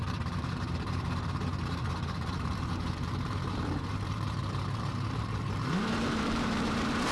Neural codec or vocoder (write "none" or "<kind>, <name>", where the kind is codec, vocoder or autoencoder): vocoder, BigVGAN v2